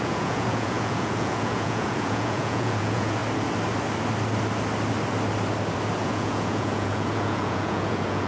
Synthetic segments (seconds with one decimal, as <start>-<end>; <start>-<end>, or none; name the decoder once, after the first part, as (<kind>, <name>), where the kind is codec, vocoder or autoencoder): 0.0-3.2 (vocoder, Vocos); 6.0-8.3